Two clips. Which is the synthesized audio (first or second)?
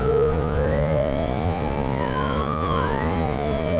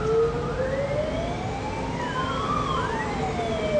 first